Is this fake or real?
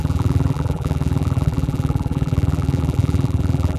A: fake